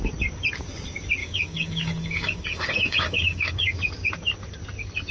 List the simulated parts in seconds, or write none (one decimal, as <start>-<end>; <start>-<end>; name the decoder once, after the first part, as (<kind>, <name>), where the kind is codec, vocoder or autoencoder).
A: 1.2-3.8 (codec, DAC)